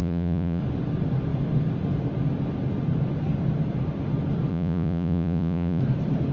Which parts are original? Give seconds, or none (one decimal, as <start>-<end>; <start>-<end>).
0.6-4.5; 5.8-6.3